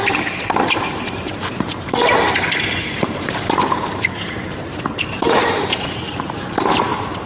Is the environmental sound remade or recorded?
remade